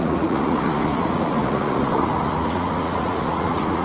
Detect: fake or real fake